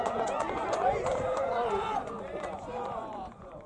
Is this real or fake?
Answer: fake